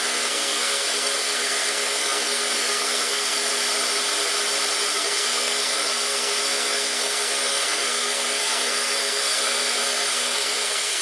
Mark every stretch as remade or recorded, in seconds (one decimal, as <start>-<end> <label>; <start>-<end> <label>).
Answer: 0.0-3.5 remade; 3.5-4.9 recorded; 4.9-11.0 remade